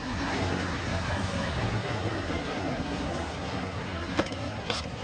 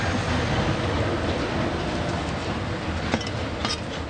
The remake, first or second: first